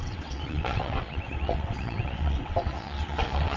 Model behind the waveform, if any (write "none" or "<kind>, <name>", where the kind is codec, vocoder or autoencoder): vocoder, WaveNeXt